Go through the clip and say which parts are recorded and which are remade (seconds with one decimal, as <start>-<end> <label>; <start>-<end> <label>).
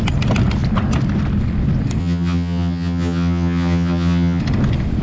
0.0-2.0 recorded; 2.0-4.4 remade; 4.4-5.0 recorded